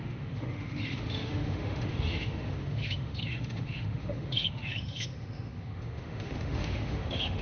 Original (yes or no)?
no